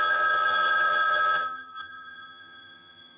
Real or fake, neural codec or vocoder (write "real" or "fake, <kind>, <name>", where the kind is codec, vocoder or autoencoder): fake, vocoder, HiFi-GAN